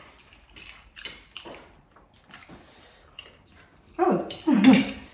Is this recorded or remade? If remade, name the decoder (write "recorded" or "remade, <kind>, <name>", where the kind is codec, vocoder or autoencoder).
remade, vocoder, BigVGAN v2